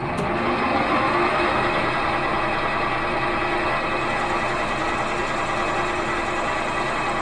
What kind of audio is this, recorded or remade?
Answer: recorded